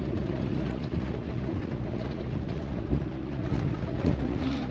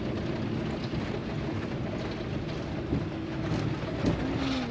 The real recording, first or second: second